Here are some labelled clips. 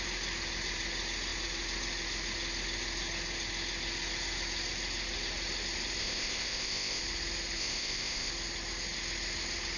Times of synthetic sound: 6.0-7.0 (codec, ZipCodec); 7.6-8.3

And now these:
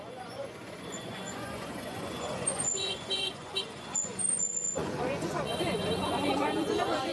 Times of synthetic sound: 0.0-7.1 (vocoder, Vocos)

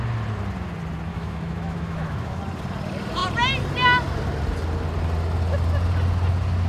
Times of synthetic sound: 1.1-2.4 (autoencoder, DAC-VAE)

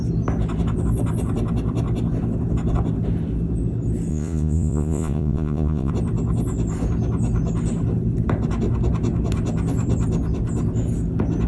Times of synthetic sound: 4.1-5.9 (vocoder, Vocos)

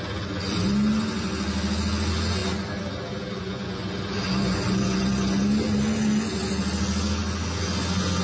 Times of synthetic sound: none

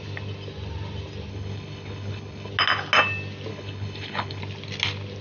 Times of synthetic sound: 1.3-2.5 (codec, HILCodec); 3.5-4.4

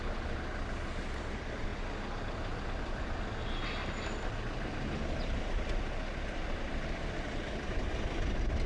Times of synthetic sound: none

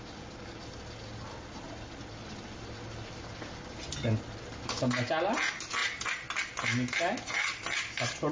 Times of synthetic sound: none